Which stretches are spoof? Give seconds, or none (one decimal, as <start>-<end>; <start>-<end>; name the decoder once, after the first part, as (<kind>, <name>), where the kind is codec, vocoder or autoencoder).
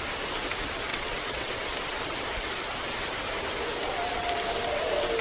0.9-1.5 (vocoder, WaveNeXt)